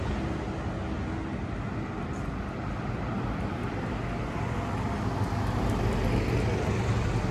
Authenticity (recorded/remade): recorded